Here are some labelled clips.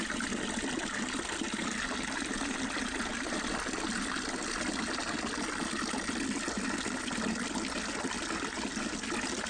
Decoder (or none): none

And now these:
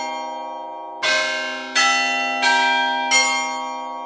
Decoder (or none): none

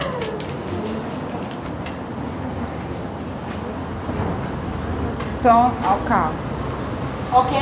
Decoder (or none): none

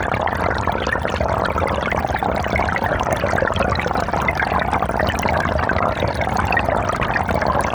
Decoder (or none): none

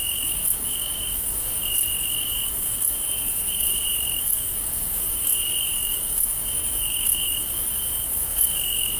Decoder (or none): codec, DAC